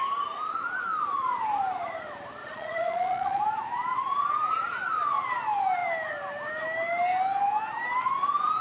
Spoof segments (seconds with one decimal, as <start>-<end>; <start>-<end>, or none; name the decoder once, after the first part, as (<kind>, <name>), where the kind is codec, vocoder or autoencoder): 2.4-3.4 (vocoder, Vocos)